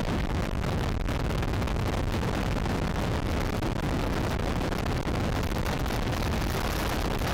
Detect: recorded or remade recorded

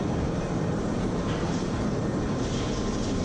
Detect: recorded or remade remade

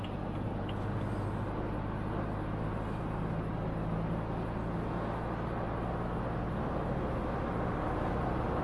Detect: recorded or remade recorded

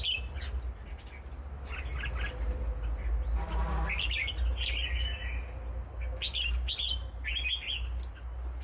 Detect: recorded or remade recorded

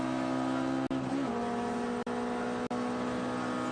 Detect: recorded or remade recorded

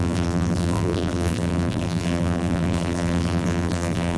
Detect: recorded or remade remade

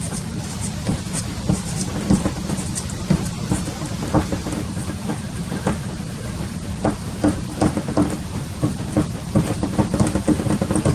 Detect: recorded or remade remade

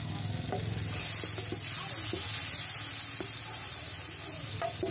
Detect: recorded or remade recorded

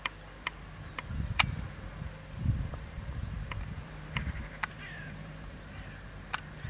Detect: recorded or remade remade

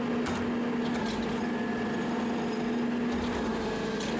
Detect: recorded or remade recorded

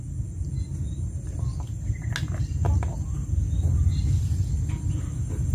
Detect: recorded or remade recorded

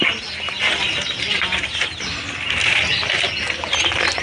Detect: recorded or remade recorded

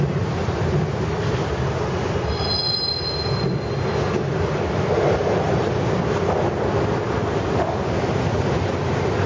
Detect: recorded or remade recorded